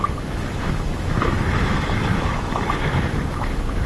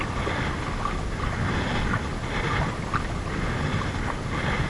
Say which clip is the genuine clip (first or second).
second